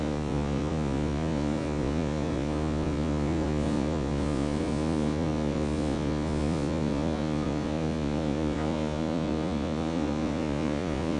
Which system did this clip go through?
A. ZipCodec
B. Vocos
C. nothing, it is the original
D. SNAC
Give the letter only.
B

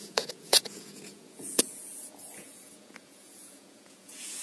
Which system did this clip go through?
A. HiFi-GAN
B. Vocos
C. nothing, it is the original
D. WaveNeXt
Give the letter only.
B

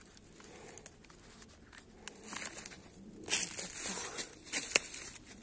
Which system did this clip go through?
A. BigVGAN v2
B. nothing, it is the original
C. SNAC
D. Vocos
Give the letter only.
B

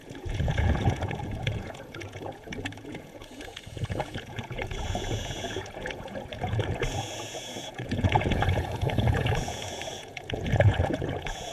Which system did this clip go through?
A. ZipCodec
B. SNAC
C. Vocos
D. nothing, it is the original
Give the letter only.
C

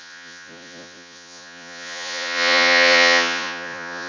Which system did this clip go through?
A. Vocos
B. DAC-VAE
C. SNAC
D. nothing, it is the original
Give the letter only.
A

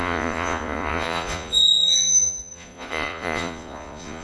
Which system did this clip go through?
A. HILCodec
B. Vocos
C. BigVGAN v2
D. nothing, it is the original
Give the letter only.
B